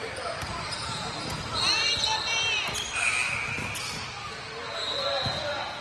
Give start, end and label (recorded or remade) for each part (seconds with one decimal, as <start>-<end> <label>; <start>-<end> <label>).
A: 0.0-1.6 remade; 1.6-5.8 recorded